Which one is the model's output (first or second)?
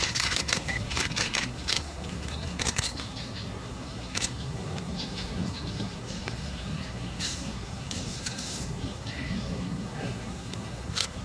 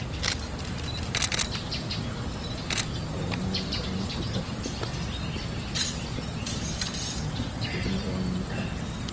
first